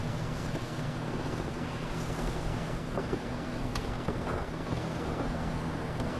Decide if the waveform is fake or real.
fake